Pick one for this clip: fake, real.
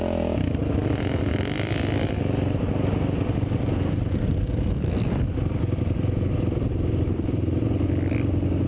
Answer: real